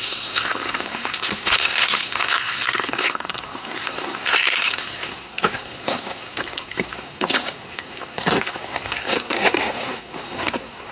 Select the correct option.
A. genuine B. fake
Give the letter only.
B